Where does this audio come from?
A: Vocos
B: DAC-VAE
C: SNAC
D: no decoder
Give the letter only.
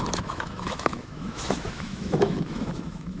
B